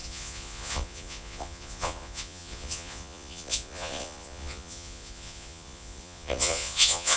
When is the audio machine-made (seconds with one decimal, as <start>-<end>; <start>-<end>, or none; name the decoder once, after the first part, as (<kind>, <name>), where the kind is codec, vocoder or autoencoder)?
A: 0.0-7.2 (vocoder, Vocos)